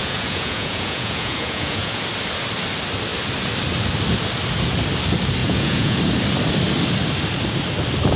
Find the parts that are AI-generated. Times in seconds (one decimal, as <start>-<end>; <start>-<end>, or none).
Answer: 0.0-2.0; 5.4-6.0